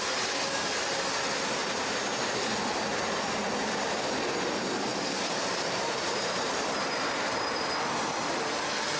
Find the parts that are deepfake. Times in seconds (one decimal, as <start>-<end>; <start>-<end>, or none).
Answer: 1.6-2.1; 2.9-3.5; 4.9-7.6